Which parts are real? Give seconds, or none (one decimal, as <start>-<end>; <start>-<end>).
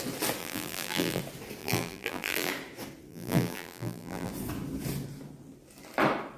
0.0-0.4; 1.2-1.6; 2.5-3.1; 4.3-6.4